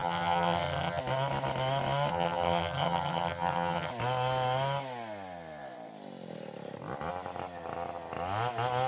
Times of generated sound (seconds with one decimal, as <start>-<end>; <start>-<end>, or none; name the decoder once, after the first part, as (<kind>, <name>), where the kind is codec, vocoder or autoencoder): 0.0-1.0 (vocoder, HiFi-GAN); 2.1-3.9